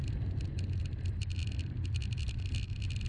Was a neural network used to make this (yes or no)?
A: no